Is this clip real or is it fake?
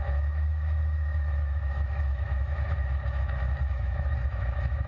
fake